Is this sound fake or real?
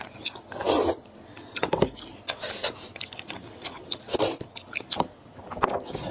real